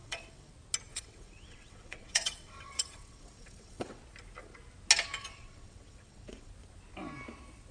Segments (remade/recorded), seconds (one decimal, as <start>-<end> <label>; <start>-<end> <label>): 0.0-0.5 remade; 0.5-0.9 recorded; 0.9-4.0 remade; 4.0-5.2 recorded; 5.2-6.5 remade; 6.5-7.7 recorded